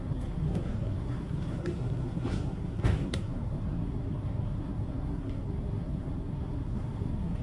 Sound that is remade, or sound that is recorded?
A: remade